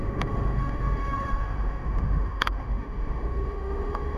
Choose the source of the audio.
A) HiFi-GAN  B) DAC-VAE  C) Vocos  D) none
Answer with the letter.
B